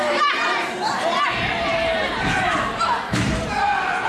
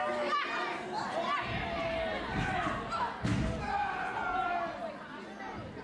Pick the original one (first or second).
second